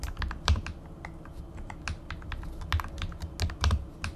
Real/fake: real